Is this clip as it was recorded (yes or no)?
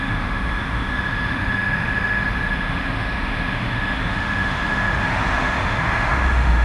no